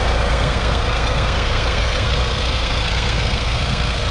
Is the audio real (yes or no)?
no